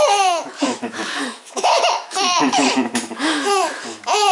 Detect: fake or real fake